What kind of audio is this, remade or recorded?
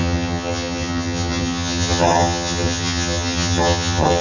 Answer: remade